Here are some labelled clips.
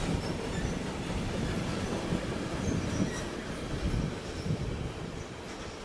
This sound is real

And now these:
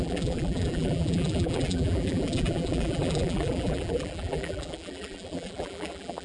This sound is fake